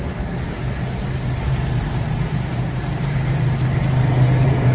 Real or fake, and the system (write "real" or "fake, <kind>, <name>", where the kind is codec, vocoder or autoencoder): fake, vocoder, BigVGAN v2